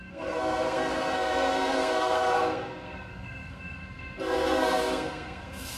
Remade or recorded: remade